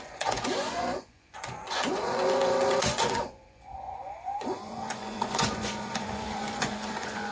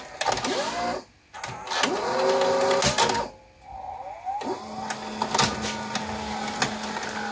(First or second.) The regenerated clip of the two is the first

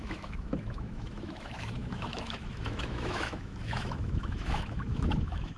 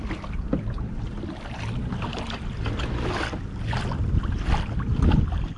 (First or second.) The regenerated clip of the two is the first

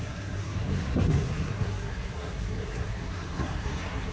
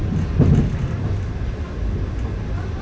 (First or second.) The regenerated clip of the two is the first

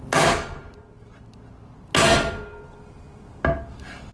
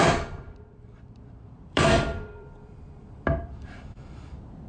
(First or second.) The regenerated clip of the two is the second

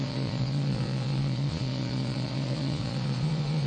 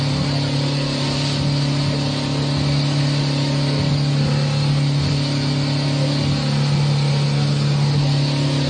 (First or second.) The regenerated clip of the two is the first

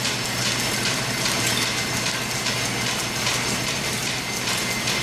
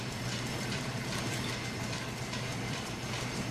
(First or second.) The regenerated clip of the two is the second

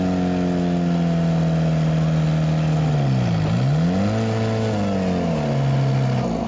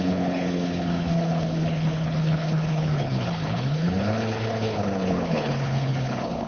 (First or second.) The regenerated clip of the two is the second